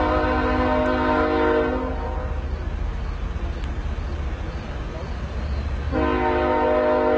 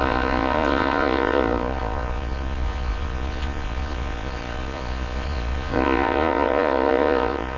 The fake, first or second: second